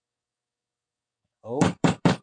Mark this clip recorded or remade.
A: remade